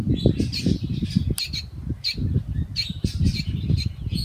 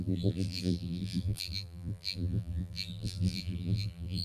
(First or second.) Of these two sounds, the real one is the first